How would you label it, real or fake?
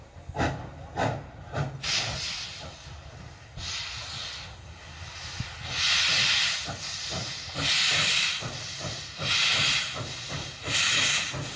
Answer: real